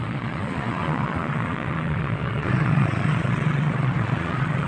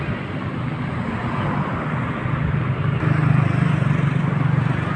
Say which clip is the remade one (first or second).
first